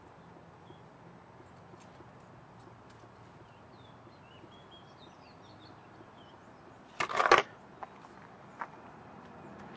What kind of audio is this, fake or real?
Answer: real